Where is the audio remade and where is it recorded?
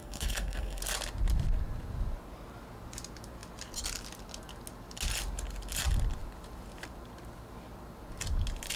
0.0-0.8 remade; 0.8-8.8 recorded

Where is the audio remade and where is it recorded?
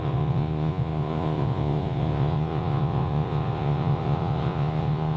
0.0-5.2 remade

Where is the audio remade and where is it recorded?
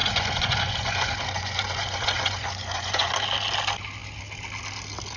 0.0-3.1 remade; 3.1-5.2 recorded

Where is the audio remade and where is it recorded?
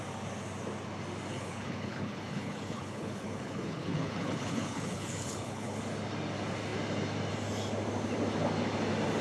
0.0-1.3 recorded; 1.3-5.8 remade; 5.8-9.2 recorded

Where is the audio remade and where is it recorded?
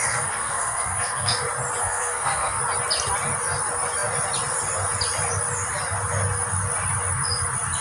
0.0-1.4 remade; 1.4-1.8 recorded; 1.8-2.6 remade; 2.6-7.8 recorded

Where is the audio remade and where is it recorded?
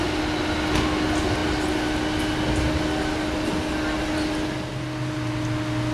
0.0-5.9 recorded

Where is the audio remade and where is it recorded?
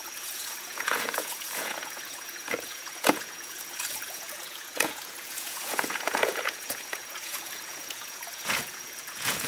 0.0-9.5 remade